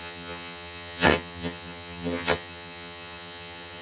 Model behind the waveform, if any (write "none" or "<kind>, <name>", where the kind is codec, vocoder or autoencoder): vocoder, HiFi-GAN